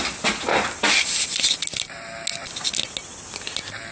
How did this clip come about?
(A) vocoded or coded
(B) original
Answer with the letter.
B